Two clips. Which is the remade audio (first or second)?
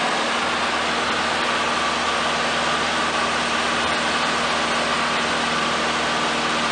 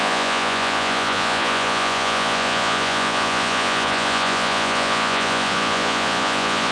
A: second